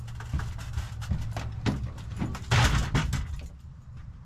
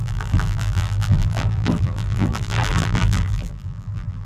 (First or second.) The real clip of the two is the first